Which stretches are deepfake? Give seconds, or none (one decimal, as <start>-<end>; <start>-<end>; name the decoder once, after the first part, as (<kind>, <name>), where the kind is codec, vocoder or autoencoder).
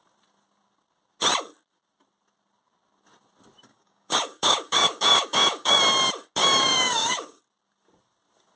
3.7-5.8 (codec, DAC); 6.4-7.4